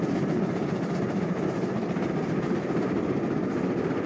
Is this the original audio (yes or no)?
yes